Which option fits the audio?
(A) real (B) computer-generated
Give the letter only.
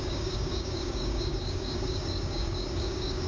B